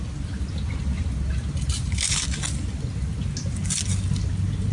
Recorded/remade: recorded